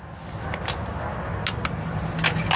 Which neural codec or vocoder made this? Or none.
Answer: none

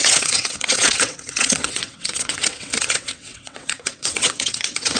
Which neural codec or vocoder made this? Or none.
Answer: vocoder, WaveNeXt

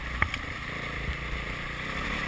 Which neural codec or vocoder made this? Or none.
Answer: vocoder, BigVGAN v2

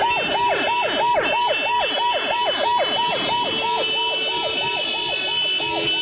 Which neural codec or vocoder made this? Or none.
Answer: none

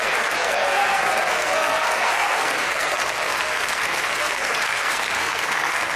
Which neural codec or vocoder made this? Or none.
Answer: codec, SNAC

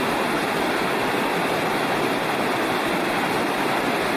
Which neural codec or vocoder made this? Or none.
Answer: none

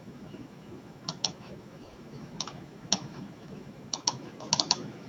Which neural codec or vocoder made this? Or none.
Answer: autoencoder, DAC-VAE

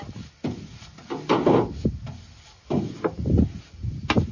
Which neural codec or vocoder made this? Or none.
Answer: none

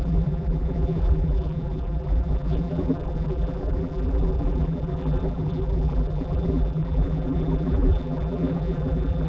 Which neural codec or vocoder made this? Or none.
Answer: vocoder, BigVGAN v2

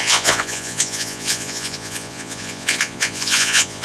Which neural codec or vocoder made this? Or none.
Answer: vocoder, Vocos